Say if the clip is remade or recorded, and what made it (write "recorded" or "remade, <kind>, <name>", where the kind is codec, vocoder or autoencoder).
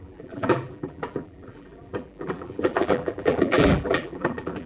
remade, vocoder, BigVGAN v2